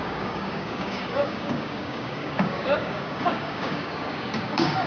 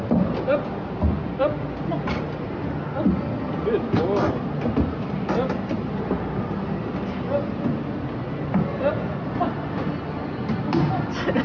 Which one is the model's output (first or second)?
first